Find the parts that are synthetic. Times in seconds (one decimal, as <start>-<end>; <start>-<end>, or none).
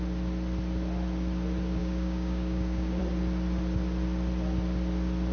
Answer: 1.8-3.0